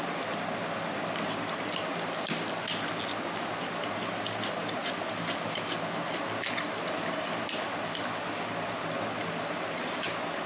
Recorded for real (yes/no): yes